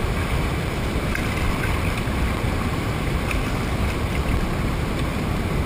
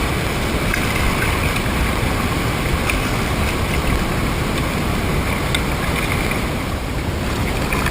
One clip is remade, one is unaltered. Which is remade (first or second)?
first